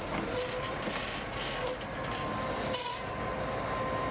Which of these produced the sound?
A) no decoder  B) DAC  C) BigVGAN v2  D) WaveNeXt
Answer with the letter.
A